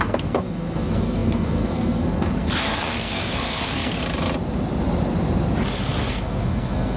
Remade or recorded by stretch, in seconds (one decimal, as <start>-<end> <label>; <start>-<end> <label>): 0.0-4.0 remade; 4.0-6.0 recorded; 6.0-7.0 remade

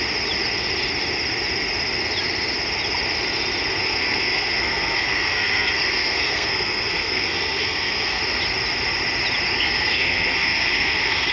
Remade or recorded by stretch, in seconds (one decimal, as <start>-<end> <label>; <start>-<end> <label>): 0.0-3.8 recorded; 3.8-8.2 remade; 8.2-9.5 recorded; 9.5-11.3 remade

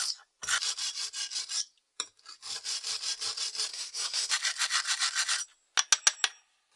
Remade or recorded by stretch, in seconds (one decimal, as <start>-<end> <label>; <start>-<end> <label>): 0.0-3.7 recorded; 3.7-4.3 remade; 4.3-6.8 recorded

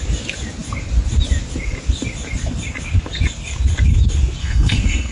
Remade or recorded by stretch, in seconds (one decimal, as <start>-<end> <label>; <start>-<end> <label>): 0.0-4.4 recorded; 4.4-5.1 remade

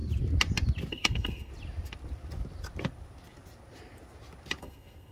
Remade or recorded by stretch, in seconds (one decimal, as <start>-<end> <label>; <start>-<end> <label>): 0.0-0.9 recorded; 0.9-1.5 remade; 1.5-4.6 recorded; 4.6-5.1 remade